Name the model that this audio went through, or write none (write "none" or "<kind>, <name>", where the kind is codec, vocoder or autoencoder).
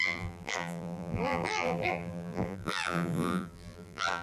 vocoder, BigVGAN v2